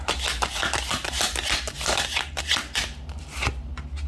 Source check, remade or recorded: recorded